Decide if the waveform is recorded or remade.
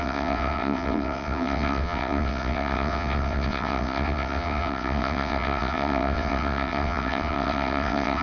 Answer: remade